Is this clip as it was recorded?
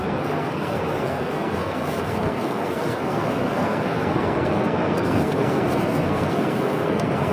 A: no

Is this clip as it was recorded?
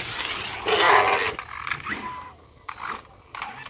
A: yes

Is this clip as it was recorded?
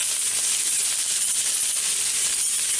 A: yes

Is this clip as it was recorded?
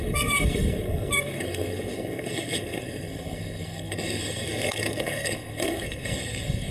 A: no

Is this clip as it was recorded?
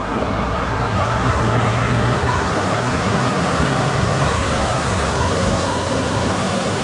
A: no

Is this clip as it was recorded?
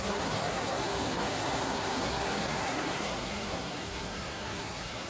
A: no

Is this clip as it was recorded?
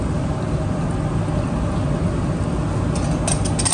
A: yes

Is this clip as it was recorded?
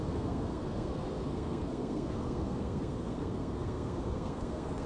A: no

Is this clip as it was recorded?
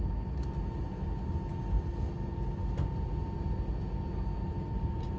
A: yes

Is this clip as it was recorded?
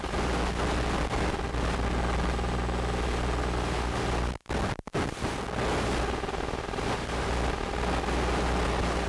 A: yes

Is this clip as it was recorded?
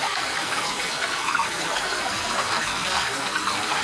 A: no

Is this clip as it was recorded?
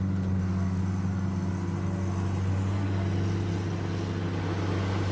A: yes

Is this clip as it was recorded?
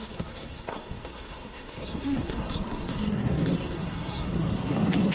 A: no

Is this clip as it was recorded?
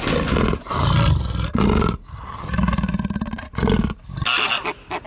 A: yes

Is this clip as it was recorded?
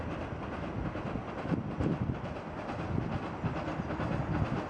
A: yes